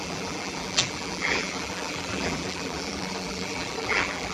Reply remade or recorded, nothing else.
remade